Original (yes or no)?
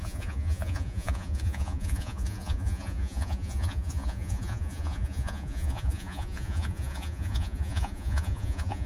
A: no